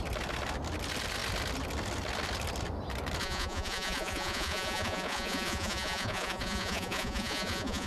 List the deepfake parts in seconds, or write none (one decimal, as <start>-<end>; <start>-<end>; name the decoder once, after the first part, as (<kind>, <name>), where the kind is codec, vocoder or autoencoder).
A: 3.2-7.9 (vocoder, Vocos)

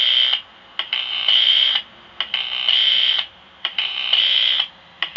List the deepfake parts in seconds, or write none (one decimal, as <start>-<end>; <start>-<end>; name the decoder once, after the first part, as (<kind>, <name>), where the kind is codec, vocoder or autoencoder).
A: 1.1-1.8 (vocoder, BigVGAN v2); 2.8-4.7

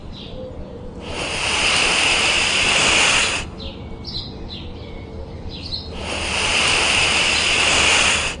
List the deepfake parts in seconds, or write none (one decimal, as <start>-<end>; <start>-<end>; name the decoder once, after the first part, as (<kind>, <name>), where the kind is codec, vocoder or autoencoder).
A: none

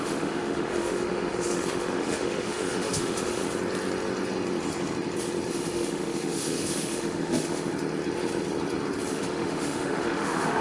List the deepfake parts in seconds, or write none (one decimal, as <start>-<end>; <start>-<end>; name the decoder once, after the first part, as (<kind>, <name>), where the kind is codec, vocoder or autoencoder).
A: 0.0-3.4 (autoencoder, DAC-VAE); 5.5-7.7; 9.1-10.6

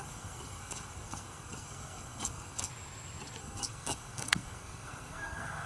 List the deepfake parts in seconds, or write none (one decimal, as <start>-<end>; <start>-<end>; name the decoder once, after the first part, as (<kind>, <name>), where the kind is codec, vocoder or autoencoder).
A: 0.0-2.7 (codec, SNAC); 3.4-5.7

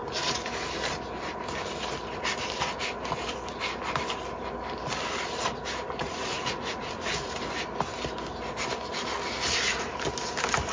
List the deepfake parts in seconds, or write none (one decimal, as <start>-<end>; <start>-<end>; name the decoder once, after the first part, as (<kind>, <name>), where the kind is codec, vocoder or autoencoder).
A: 6.0-7.3 (vocoder, Vocos)

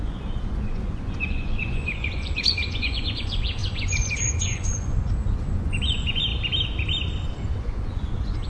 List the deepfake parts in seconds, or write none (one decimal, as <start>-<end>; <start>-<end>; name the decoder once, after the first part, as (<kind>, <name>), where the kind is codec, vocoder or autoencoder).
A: 0.0-6.3 (vocoder, Vocos); 7.6-8.5

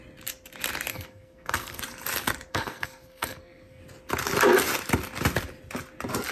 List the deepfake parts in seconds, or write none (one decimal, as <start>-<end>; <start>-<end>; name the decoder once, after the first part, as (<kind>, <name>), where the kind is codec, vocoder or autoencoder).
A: 0.9-1.8 (codec, SNAC); 2.5-3.8